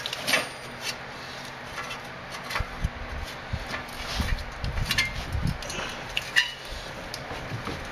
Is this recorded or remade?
recorded